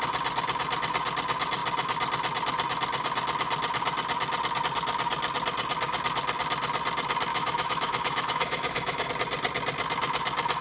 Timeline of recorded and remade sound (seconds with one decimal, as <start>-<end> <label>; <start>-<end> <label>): 0.0-7.3 recorded; 7.3-9.1 remade; 9.1-10.6 recorded